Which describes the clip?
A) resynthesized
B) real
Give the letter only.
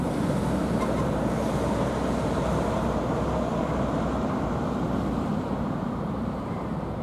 A